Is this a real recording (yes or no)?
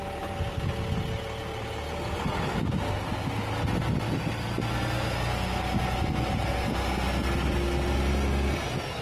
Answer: yes